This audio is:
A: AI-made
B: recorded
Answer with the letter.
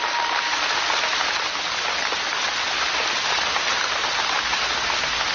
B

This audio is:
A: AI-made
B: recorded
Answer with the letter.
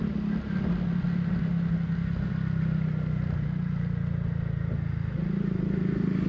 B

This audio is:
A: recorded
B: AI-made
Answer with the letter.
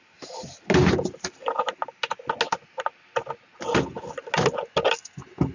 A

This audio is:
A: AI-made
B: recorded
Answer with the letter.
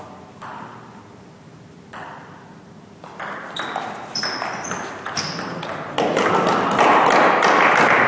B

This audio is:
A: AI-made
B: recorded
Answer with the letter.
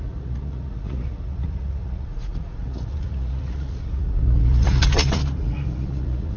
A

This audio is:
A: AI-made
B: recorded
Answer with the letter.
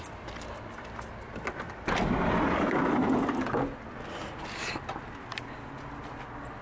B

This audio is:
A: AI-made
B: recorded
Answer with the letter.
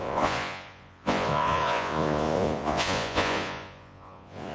A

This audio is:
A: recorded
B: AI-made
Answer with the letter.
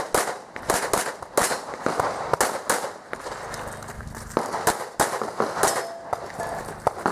A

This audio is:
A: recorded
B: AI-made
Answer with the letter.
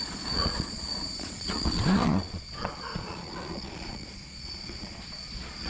B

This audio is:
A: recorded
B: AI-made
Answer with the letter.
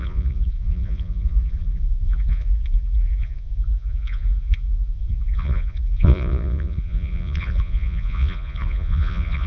B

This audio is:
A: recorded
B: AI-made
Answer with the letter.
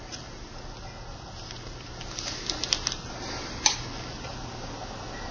A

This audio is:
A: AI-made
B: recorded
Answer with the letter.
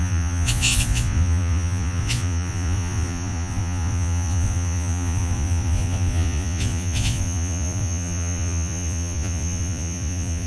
A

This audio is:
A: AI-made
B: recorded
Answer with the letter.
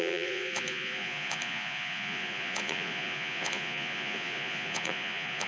A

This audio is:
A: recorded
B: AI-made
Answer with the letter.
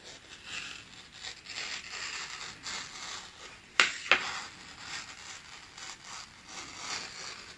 A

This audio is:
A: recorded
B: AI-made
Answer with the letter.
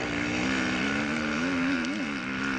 A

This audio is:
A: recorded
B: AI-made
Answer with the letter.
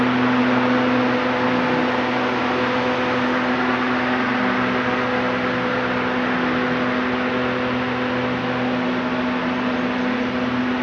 A